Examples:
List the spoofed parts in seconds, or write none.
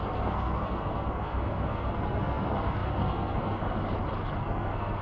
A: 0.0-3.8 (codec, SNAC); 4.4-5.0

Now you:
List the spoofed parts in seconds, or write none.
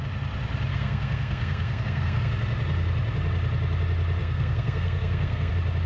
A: 0.7-2.3 (codec, SNAC); 4.2-5.5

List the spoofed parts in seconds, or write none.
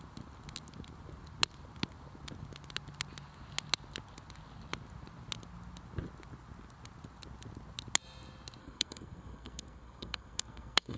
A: 8.6-11.0 (codec, SNAC)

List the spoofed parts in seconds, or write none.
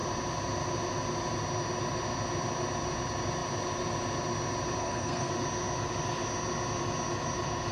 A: 4.8-5.3 (codec, SNAC)